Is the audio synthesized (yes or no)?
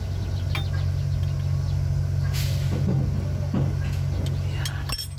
no